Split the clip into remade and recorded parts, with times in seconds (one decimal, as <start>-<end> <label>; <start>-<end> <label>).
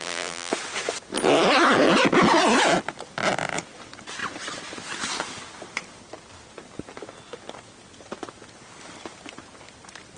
0.0-0.5 remade; 0.5-10.2 recorded